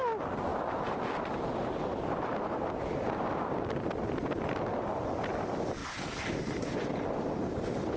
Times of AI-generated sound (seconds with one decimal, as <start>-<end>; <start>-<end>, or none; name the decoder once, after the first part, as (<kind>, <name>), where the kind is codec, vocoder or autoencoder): 0.5-1.0 (vocoder, BigVGAN v2); 1.5-2.3; 5.8-7.6